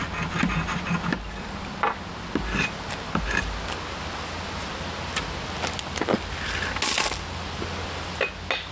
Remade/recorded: recorded